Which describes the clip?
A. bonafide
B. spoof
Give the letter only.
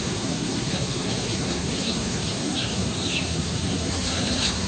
B